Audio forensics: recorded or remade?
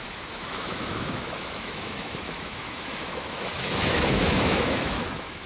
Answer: remade